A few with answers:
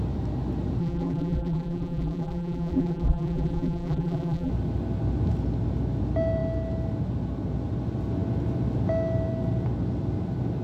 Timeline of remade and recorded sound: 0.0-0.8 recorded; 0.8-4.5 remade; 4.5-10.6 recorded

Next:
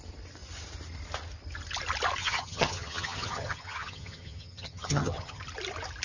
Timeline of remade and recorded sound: 0.0-2.2 recorded; 2.2-5.4 remade; 5.4-6.0 recorded

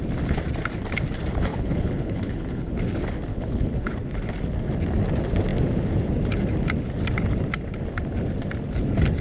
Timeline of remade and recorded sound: 0.0-1.5 recorded; 1.5-2.8 remade; 2.8-3.3 recorded; 3.3-3.9 remade; 3.9-9.2 recorded

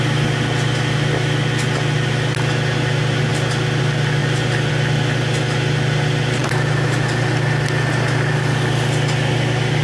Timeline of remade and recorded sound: 0.0-9.8 recorded

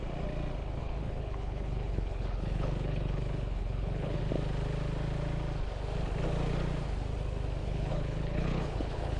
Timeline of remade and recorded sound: 0.0-0.8 recorded; 0.8-4.2 remade; 4.2-7.6 recorded; 7.6-9.2 remade

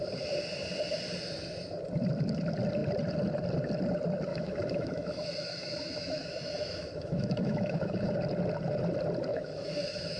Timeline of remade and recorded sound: 0.0-4.3 recorded; 4.3-8.1 remade; 8.1-9.3 recorded; 9.3-10.2 remade

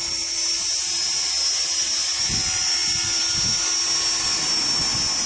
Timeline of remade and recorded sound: 0.0-5.3 recorded

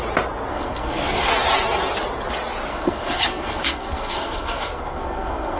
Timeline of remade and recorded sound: 0.0-0.5 recorded; 0.5-1.3 remade; 1.3-2.7 recorded; 2.7-5.6 remade